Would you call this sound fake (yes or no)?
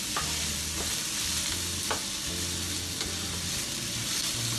no